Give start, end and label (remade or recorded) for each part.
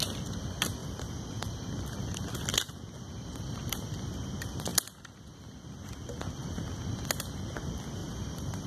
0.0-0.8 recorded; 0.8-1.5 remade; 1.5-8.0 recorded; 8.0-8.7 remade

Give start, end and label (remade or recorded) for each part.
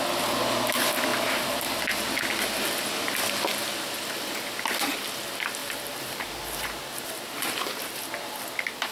0.0-1.1 recorded; 1.1-1.8 remade; 1.8-5.6 recorded; 5.6-8.1 remade; 8.1-8.9 recorded